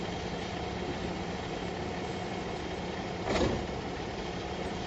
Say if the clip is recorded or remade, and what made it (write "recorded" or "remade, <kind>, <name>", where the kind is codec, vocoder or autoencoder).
recorded